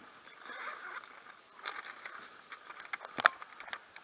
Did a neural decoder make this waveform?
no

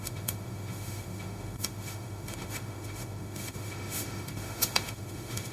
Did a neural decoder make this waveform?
yes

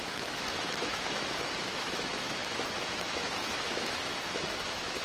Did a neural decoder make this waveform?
yes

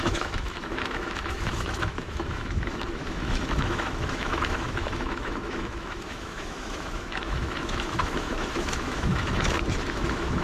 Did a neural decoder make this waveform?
yes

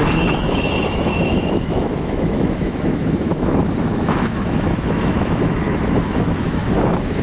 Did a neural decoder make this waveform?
yes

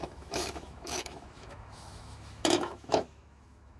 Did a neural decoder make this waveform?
yes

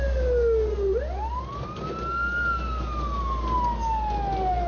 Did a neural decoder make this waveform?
no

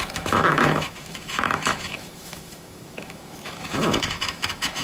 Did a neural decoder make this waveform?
yes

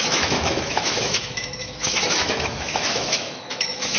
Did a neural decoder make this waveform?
yes